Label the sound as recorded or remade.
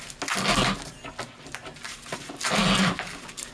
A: recorded